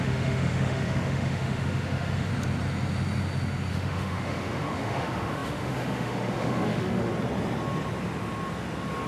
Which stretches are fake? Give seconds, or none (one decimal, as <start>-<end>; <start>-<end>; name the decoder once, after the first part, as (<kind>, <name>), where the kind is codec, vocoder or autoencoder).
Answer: 0.0-2.3 (autoencoder, DAC-VAE); 3.7-7.1